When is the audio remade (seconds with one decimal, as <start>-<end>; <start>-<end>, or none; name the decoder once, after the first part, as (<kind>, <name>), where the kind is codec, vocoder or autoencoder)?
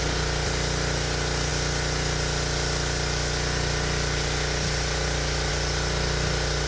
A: none